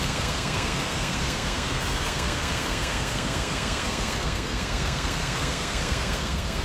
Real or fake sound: fake